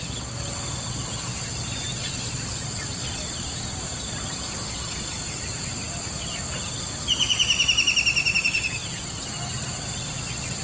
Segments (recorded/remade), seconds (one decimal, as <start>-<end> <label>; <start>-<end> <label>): 0.0-1.3 recorded; 1.3-3.5 remade; 3.5-8.8 recorded; 8.8-9.5 remade; 9.5-10.6 recorded